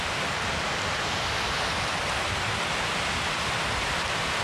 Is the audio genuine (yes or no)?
yes